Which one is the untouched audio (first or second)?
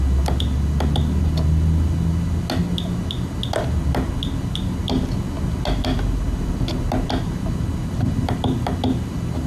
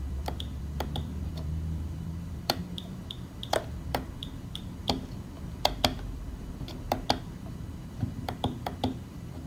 first